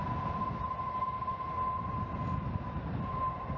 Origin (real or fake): real